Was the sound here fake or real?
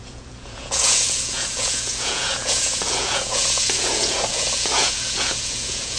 fake